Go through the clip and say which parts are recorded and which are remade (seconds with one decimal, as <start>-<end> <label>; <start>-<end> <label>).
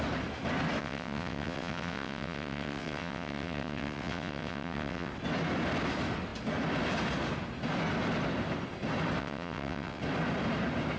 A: 0.0-0.8 recorded; 0.8-5.1 remade; 5.1-9.2 recorded; 9.2-10.0 remade; 10.0-11.0 recorded